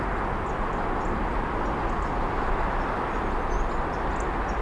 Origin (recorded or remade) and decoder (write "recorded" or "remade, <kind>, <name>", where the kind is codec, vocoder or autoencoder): recorded